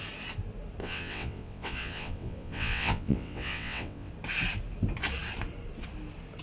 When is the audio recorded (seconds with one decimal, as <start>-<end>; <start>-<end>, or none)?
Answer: 0.0-0.8; 4.1-6.4

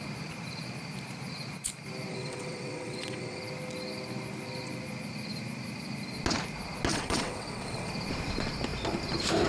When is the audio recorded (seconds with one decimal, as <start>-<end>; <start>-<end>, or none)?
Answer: 0.0-2.1; 3.4-6.9; 7.9-9.5

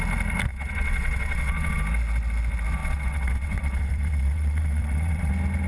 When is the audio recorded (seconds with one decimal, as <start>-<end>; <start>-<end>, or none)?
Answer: 0.0-0.5; 1.8-2.8; 5.3-5.7

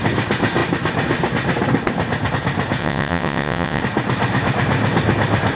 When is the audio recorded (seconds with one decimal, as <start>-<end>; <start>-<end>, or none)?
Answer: 0.0-2.8; 3.8-5.6

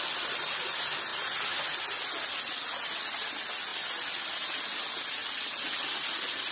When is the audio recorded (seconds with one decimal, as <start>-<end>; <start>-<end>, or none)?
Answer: 0.0-6.5

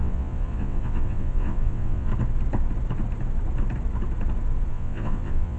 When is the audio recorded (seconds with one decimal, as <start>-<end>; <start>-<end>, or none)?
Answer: 2.1-4.7

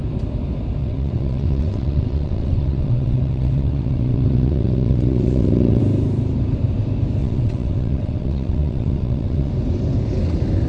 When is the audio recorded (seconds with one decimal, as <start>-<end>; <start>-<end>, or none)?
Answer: 0.0-0.8; 5.8-7.2; 9.5-10.7

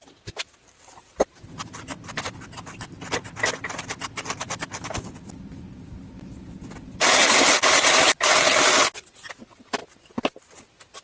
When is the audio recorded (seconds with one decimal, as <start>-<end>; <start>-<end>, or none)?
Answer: 0.0-11.0